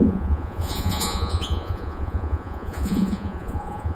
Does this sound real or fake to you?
fake